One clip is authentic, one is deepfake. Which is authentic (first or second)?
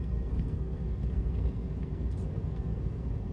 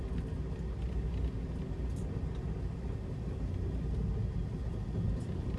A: second